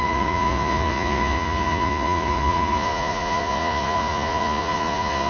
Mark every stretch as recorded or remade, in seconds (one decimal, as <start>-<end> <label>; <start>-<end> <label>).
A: 0.0-5.3 remade